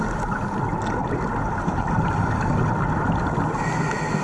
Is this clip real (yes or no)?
yes